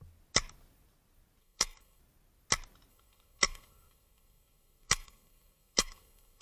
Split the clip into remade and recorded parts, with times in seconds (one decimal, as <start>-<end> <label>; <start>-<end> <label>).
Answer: 0.0-1.4 recorded; 1.4-2.0 remade; 2.0-2.9 recorded; 2.9-6.4 remade